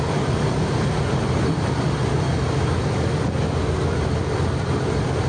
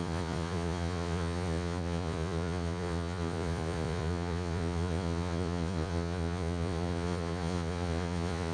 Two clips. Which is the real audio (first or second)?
first